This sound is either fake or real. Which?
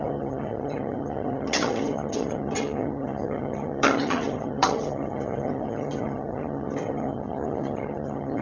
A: fake